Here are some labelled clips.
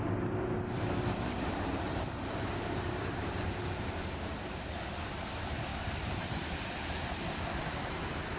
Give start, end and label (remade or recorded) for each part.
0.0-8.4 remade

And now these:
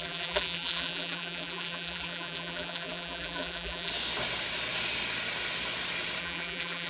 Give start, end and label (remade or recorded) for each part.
0.0-3.9 remade; 3.9-6.2 recorded; 6.2-6.9 remade